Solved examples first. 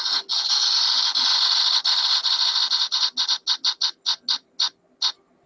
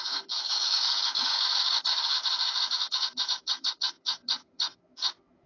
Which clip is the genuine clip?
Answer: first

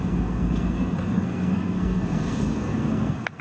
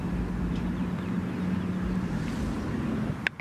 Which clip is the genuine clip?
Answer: second